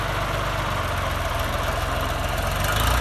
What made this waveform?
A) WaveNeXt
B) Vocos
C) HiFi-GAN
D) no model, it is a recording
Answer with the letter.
D